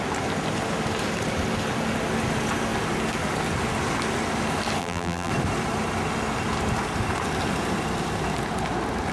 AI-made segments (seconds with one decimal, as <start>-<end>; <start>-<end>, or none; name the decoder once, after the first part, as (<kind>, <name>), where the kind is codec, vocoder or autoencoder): 4.8-5.3 (vocoder, BigVGAN v2)